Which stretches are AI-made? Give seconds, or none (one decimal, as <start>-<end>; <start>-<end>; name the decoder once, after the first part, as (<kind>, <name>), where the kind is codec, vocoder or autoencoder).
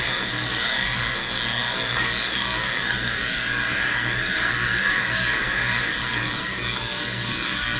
0.0-7.8 (codec, SNAC)